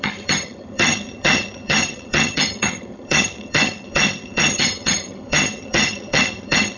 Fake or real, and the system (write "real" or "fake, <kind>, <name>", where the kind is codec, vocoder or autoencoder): fake, vocoder, HiFi-GAN